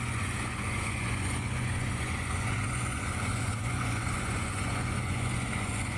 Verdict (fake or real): fake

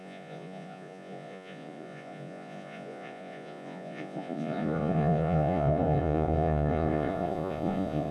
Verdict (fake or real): fake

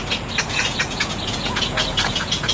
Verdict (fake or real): fake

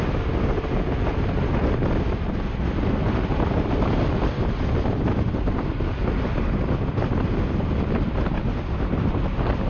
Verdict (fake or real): real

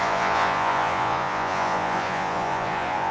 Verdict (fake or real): fake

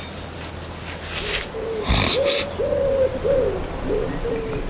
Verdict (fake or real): real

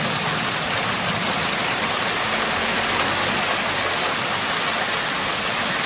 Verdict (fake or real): real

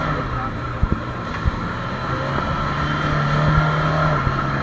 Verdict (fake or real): real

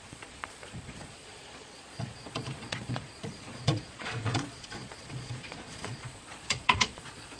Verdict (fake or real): fake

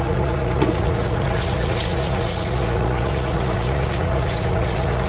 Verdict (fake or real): fake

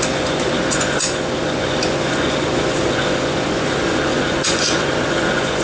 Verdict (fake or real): fake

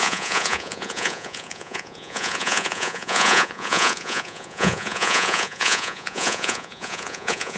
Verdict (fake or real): fake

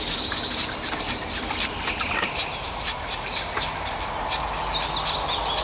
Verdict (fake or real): real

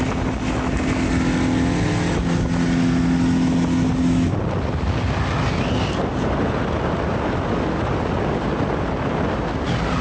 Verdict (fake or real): real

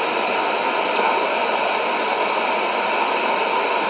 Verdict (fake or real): real